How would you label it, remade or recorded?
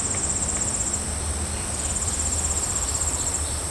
remade